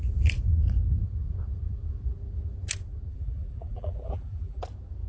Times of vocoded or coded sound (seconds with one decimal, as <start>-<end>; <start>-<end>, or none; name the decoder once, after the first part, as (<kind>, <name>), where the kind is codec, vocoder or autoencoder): 3.1-4.6 (vocoder, BigVGAN v2)